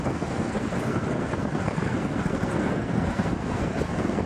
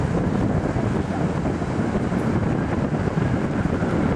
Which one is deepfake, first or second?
first